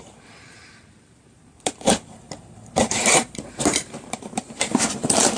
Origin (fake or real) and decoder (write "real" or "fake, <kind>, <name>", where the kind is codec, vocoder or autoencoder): fake, vocoder, BigVGAN v2